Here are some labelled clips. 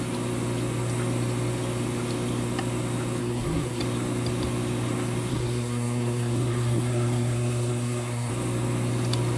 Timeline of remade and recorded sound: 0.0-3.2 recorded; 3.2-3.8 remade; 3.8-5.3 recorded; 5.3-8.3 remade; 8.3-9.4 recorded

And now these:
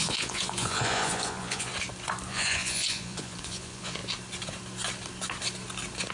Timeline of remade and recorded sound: 0.0-1.7 remade; 1.7-2.3 recorded; 2.3-4.0 remade; 4.0-6.1 recorded

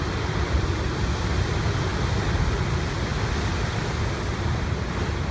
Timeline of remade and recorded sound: 0.0-5.3 recorded